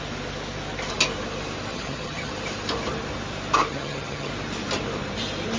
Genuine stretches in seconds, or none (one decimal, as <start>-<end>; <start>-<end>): 0.0-1.7; 2.3-3.7; 4.3-5.6